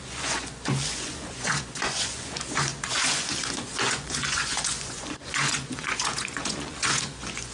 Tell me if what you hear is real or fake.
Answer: fake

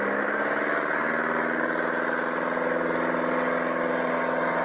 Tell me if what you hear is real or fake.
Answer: real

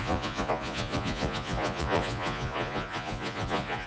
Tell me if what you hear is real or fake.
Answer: fake